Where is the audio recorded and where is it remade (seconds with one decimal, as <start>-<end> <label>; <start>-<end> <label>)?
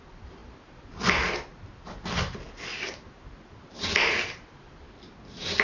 0.0-5.6 recorded